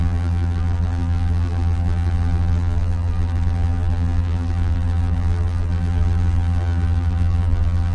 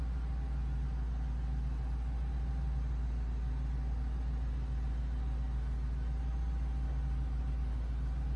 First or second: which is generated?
first